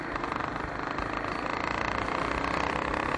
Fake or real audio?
real